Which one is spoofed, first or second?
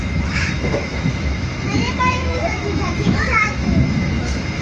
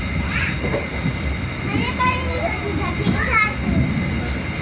first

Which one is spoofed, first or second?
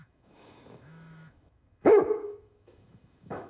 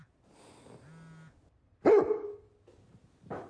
first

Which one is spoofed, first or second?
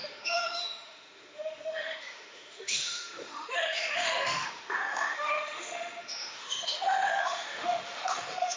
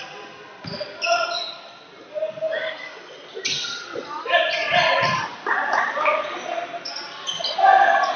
first